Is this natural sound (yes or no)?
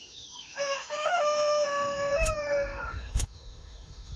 no